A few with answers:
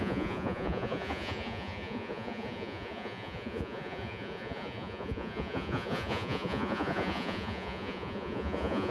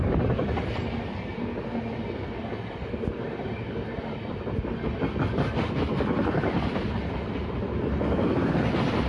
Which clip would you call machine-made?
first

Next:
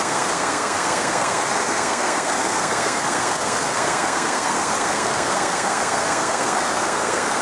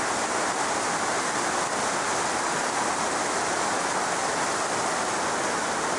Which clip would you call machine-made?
first